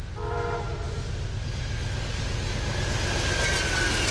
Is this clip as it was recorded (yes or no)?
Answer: yes